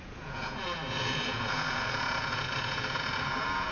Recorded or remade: remade